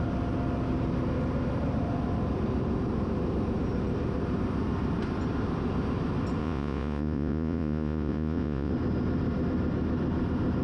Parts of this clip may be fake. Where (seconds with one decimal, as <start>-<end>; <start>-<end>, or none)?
6.4-8.7